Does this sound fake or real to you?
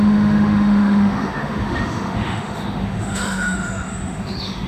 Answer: fake